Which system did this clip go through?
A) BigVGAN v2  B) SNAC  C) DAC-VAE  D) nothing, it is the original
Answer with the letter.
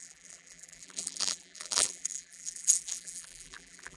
A